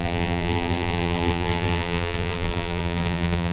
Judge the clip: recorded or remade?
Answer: remade